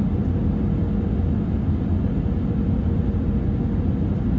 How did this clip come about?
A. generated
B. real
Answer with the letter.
B